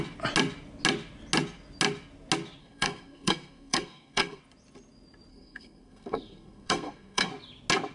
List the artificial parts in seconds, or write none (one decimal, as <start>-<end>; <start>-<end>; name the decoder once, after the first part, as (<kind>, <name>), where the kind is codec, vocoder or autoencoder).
2.6-4.4 (codec, SNAC); 5.3-7.3